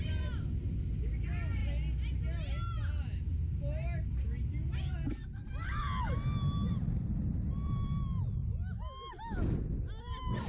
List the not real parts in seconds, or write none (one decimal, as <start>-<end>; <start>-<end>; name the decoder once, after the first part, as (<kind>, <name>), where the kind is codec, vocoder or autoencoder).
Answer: none